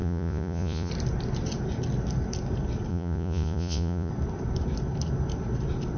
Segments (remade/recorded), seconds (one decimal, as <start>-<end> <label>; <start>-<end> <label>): 0.0-0.9 remade; 0.9-2.9 recorded; 2.9-4.1 remade; 4.1-6.0 recorded